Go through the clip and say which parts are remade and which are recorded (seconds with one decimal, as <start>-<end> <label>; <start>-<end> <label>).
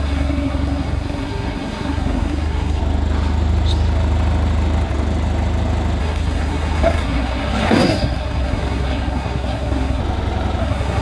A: 0.0-2.8 remade; 2.8-6.0 recorded; 6.0-10.0 remade; 10.0-10.6 recorded; 10.6-11.0 remade